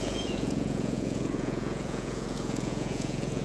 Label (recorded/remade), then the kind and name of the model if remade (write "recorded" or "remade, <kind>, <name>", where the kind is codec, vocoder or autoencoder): remade, vocoder, Vocos